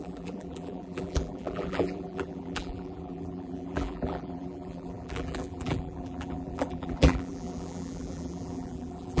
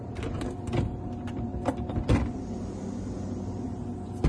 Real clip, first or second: second